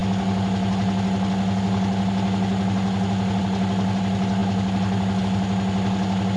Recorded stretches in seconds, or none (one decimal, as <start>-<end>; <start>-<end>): 0.0-6.4